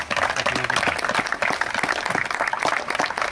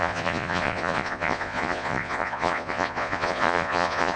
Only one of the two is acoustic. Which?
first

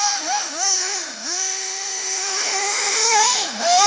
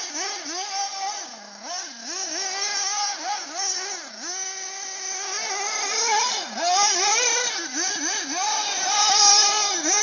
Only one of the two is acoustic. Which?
second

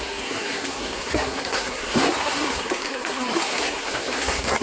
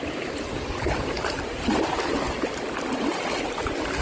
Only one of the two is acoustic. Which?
second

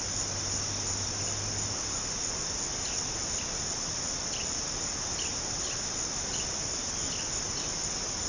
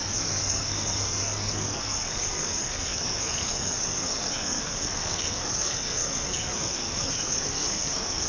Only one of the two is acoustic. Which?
first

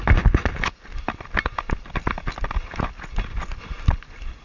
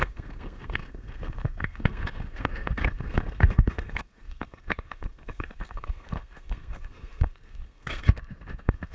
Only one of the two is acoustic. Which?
first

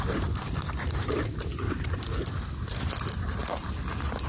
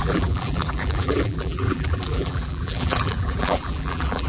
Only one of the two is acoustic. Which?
first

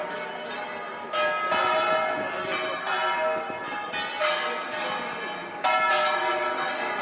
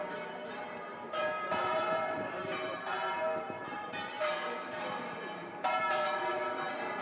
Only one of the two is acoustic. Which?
first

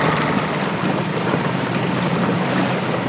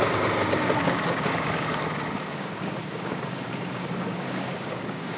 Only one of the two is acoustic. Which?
first